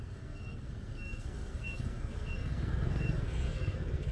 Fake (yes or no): yes